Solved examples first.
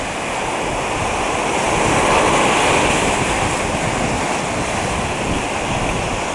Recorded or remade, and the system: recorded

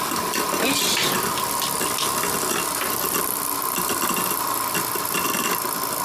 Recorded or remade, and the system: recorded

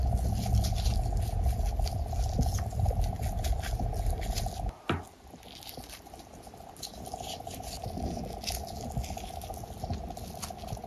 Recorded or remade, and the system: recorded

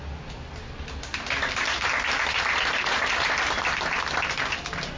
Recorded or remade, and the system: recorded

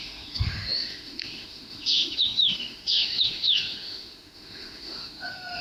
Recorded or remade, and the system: remade, autoencoder, DAC-VAE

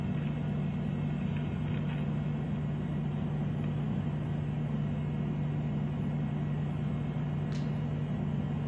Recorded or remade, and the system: recorded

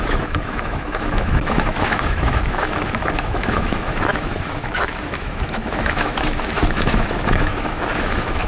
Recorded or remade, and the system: remade, autoencoder, DAC-VAE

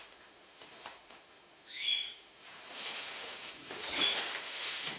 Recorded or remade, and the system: remade, autoencoder, DAC-VAE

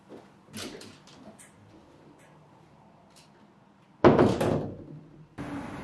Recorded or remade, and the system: recorded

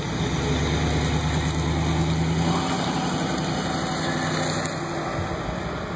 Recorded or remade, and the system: recorded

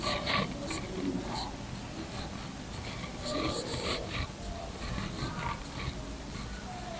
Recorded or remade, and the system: recorded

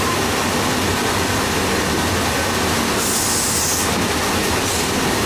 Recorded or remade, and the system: recorded